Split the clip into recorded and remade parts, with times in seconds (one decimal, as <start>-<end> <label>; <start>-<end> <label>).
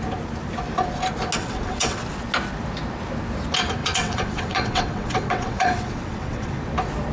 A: 0.0-1.4 recorded; 1.4-2.0 remade; 2.0-3.8 recorded; 3.8-6.6 remade; 6.6-7.1 recorded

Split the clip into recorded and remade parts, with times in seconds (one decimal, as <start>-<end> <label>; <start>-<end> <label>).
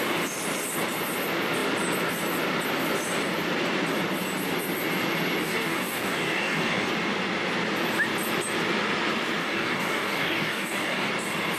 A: 0.0-5.4 recorded; 5.4-6.9 remade; 6.9-9.4 recorded; 9.4-11.1 remade; 11.1-11.6 recorded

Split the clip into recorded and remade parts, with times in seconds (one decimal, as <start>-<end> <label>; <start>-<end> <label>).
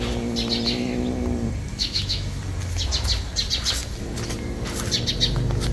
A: 0.0-1.7 recorded; 1.7-2.4 remade; 2.4-5.7 recorded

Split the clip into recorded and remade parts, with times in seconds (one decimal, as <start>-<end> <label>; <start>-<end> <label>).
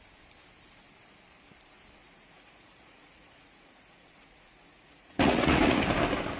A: 0.0-2.0 recorded; 2.0-5.8 remade; 5.8-6.4 recorded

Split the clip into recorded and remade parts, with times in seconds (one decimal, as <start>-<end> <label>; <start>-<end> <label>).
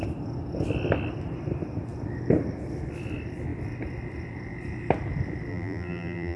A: 0.0-5.5 recorded; 5.5-6.4 remade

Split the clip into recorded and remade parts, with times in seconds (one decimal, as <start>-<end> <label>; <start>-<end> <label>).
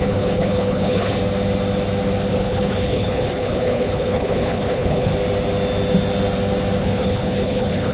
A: 0.0-1.2 remade; 1.2-2.3 recorded; 2.3-5.1 remade; 5.1-6.8 recorded; 6.8-7.9 remade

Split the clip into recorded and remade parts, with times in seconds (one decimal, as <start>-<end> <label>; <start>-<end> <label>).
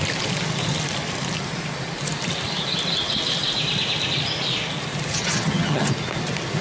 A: 0.0-5.1 recorded; 5.1-5.9 remade; 5.9-6.6 recorded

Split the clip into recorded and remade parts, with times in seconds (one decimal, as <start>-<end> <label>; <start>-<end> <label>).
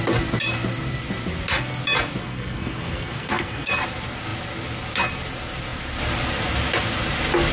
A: 0.0-2.2 recorded; 2.2-3.7 remade; 3.7-7.5 recorded